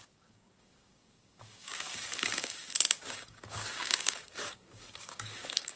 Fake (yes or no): yes